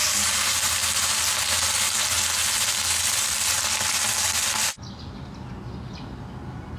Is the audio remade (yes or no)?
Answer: no